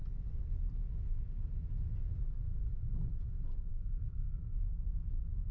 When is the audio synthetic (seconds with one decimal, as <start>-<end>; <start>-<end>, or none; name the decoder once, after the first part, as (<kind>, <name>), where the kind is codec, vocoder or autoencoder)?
3.7-5.1 (codec, SNAC)